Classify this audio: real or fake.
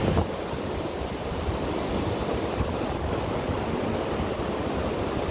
real